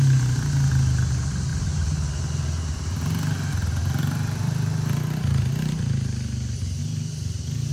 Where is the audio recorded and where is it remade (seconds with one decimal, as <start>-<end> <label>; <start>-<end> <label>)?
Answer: 0.0-1.5 recorded; 1.5-5.9 remade; 5.9-7.7 recorded